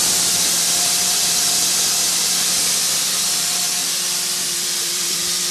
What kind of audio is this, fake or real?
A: fake